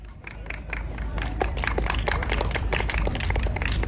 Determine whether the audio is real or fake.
fake